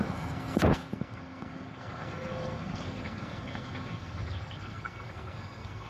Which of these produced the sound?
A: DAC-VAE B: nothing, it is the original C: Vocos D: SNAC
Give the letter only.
D